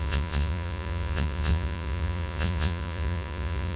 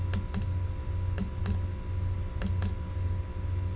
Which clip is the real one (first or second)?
second